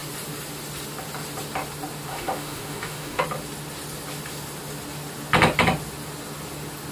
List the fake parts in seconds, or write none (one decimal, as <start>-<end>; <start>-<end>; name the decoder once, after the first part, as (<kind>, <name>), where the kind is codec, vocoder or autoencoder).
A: 2.1-3.2 (autoencoder, DAC-VAE)